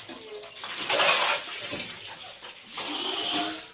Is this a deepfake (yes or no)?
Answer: no